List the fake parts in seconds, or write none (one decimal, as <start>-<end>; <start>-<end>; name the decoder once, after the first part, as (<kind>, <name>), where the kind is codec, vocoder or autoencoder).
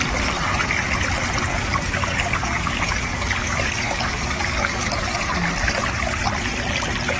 1.5-5.2 (codec, DAC)